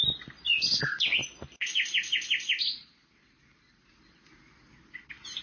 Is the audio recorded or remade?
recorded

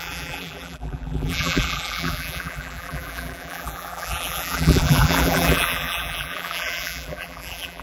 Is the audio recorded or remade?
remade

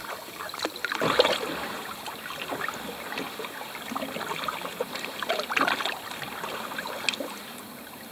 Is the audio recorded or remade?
recorded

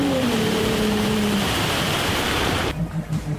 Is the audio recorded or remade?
remade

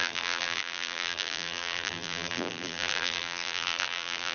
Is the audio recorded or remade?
remade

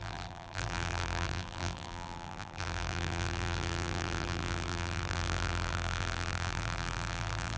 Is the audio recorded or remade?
remade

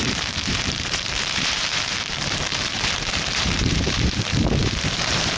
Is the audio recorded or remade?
remade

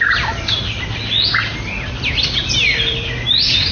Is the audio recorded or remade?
remade